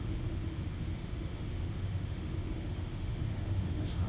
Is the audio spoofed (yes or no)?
yes